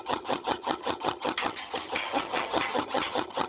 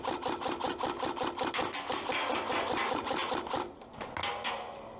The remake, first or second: first